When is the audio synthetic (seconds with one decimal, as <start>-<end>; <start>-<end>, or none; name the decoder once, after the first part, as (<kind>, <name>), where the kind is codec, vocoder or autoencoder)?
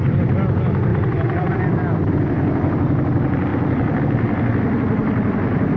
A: 0.9-2.1 (vocoder, BigVGAN v2); 3.5-4.0